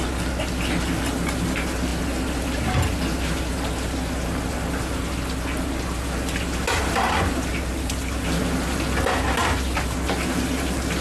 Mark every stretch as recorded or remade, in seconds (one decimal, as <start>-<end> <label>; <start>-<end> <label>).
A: 0.0-11.0 recorded